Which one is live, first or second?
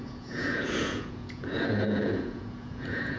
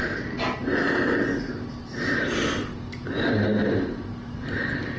second